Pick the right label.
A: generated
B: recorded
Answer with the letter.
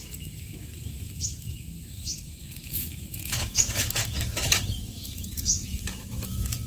A